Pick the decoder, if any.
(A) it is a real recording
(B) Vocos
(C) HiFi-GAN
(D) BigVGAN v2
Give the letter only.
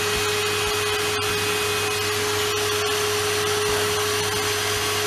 A